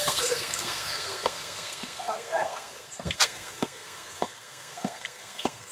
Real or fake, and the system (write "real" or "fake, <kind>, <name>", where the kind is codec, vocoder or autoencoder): fake, codec, SNAC